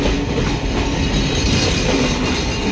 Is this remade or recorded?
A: recorded